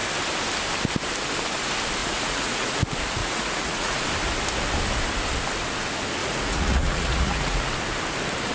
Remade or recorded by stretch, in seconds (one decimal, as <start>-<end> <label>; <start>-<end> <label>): 0.0-2.0 recorded; 2.0-2.8 remade; 2.8-3.2 recorded; 3.2-4.0 remade; 4.0-6.2 recorded; 6.2-7.7 remade; 7.7-8.5 recorded